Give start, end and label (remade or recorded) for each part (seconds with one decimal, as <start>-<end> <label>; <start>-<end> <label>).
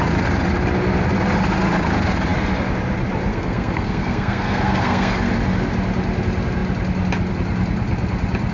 0.0-3.3 recorded; 3.3-5.3 remade; 5.3-8.5 recorded